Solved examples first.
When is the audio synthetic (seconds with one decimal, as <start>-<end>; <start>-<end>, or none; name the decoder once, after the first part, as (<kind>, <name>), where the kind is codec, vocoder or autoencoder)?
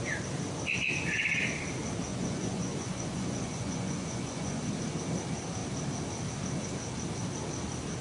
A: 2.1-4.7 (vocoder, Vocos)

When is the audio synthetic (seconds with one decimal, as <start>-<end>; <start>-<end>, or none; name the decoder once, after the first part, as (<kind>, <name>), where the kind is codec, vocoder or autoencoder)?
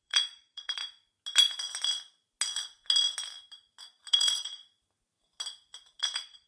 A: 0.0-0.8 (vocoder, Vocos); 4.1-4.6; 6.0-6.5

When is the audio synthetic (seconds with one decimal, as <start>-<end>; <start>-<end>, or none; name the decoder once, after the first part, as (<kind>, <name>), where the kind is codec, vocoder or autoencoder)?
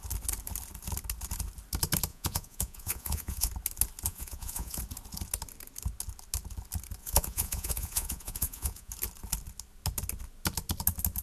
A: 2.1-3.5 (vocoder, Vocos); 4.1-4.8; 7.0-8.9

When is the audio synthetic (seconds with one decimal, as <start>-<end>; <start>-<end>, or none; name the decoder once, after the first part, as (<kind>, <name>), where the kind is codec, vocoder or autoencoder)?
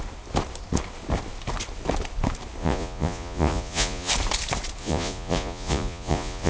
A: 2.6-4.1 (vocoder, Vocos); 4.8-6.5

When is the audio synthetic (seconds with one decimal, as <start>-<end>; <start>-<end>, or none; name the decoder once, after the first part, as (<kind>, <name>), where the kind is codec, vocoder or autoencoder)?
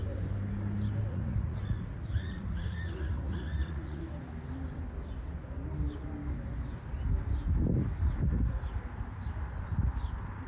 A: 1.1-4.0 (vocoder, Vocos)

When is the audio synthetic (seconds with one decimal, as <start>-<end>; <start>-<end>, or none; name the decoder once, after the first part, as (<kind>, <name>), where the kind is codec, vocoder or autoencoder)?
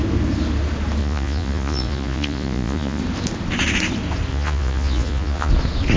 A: 1.0-3.0 (vocoder, Vocos); 4.3-5.5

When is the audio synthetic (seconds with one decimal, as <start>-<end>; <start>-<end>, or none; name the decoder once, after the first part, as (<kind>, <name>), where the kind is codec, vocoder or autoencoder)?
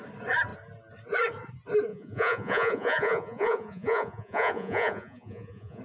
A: 1.9-5.8 (vocoder, Vocos)